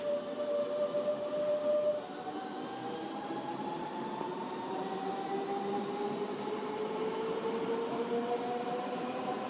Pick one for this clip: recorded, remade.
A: recorded